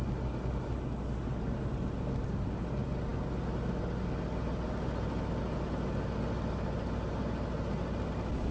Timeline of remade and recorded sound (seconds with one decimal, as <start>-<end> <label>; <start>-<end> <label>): 0.0-8.5 recorded